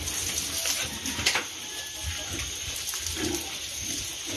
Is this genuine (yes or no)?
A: yes